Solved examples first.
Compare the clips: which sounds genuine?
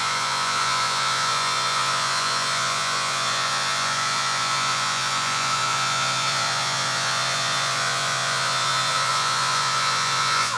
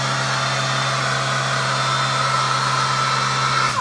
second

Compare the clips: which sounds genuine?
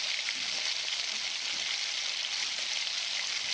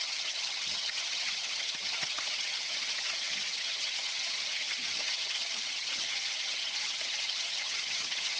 first